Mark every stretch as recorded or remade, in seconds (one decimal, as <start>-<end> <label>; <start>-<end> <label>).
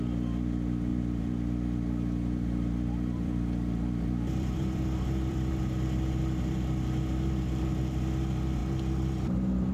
0.0-0.9 recorded; 0.9-5.5 remade; 5.5-9.7 recorded